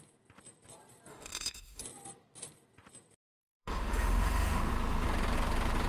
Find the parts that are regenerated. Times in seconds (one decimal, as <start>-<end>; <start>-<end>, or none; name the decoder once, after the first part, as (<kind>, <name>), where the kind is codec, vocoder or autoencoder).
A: 1.1-1.8 (autoencoder, DAC-VAE); 3.4-4.7